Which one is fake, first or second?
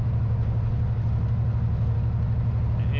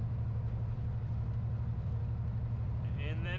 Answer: second